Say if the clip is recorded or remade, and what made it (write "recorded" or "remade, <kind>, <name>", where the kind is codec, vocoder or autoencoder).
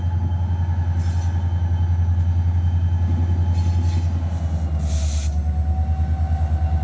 recorded